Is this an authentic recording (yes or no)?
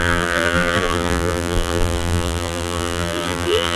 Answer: no